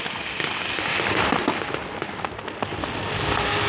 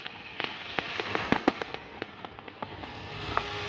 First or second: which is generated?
second